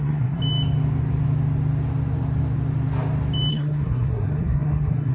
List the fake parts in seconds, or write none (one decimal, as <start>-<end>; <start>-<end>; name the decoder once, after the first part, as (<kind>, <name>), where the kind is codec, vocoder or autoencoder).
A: 0.0-0.4 (codec, SNAC); 3.5-5.1